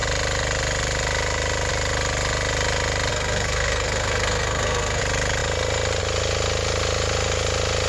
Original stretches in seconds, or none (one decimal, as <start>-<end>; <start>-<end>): 0.0-3.1; 5.0-7.9